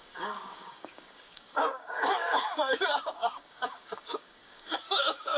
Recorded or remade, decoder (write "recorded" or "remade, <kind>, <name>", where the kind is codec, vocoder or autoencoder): remade, codec, DAC